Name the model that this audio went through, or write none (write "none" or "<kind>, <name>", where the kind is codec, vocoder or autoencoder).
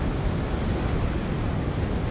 none